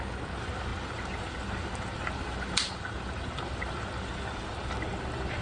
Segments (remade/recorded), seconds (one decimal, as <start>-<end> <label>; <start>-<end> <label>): 0.0-5.4 recorded